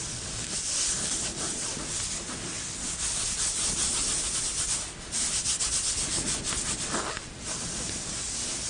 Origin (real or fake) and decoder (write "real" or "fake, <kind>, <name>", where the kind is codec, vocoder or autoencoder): real